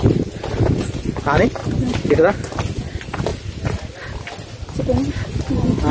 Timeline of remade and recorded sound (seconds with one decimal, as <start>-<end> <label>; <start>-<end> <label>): 0.0-5.9 recorded